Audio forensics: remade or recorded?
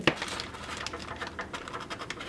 recorded